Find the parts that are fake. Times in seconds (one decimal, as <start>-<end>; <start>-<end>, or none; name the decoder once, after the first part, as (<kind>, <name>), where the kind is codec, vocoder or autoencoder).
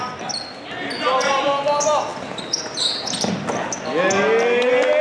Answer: none